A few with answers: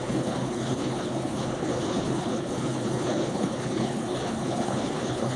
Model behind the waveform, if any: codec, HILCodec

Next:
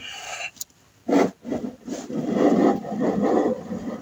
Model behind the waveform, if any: none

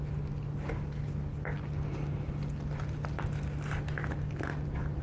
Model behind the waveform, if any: none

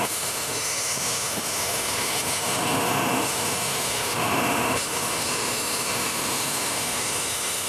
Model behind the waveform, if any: autoencoder, DAC-VAE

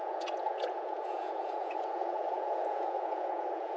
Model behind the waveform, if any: vocoder, Vocos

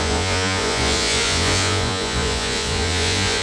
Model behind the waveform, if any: vocoder, Vocos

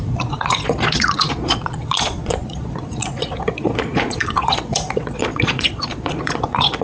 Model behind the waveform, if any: vocoder, Vocos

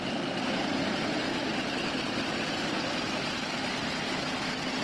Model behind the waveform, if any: none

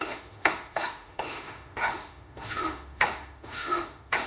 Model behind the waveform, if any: autoencoder, DAC-VAE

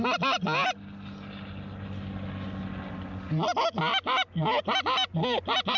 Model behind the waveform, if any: none